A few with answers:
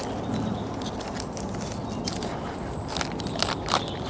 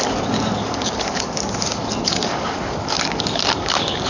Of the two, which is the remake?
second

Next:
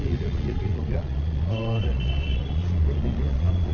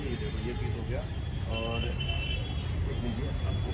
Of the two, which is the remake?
first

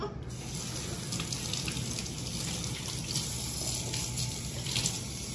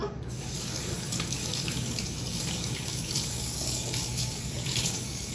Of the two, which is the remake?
second